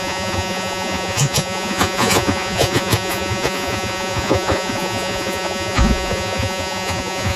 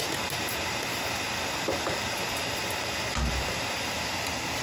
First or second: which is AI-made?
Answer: first